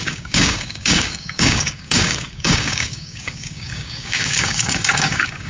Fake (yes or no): yes